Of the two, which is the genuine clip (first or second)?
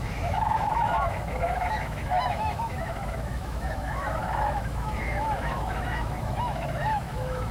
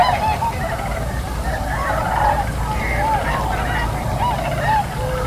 second